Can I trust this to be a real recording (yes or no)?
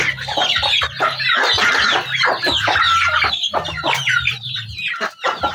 yes